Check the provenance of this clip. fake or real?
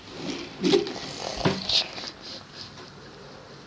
real